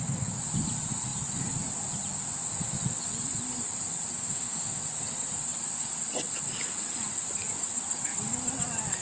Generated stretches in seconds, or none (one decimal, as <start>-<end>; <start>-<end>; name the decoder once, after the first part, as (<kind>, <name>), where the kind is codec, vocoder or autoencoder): 4.2-4.8 (autoencoder, DAC-VAE)